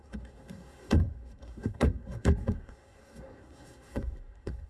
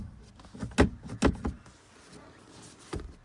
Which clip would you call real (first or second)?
second